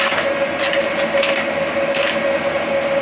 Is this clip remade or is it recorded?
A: recorded